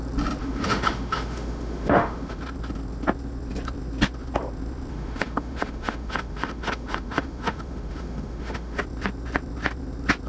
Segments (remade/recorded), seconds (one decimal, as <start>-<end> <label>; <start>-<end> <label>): 0.0-0.4 recorded; 0.4-2.4 remade; 2.4-4.9 recorded; 4.9-8.8 remade; 8.8-10.3 recorded